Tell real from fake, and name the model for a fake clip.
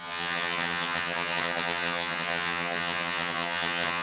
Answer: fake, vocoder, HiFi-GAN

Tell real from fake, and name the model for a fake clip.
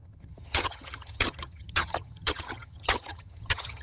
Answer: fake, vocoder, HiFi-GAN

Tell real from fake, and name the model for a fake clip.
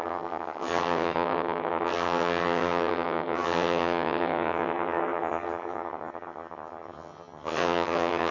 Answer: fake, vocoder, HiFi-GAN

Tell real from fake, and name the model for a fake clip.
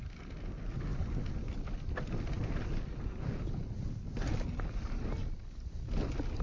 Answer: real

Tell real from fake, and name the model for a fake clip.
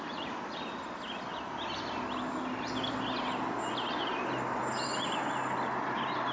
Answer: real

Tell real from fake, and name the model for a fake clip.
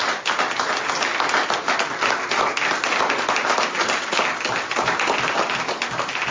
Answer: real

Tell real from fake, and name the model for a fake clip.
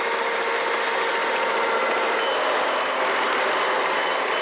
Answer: real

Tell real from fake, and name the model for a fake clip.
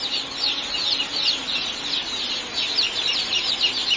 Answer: real